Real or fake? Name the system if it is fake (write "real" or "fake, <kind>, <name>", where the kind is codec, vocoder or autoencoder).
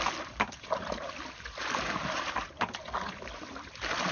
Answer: real